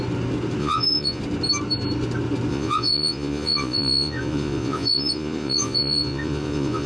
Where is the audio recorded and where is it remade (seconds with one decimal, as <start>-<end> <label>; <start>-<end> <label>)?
0.0-0.6 recorded; 0.6-1.2 remade; 1.2-2.5 recorded; 2.5-6.9 remade